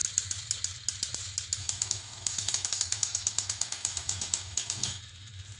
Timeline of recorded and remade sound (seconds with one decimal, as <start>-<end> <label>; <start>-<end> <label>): 0.0-1.6 recorded; 1.6-5.0 remade; 5.0-5.6 recorded